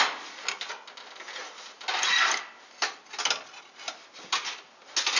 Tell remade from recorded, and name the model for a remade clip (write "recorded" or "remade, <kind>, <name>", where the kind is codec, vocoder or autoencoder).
recorded